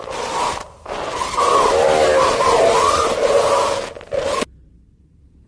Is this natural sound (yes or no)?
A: yes